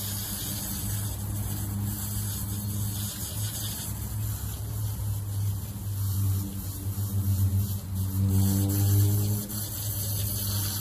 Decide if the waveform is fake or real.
real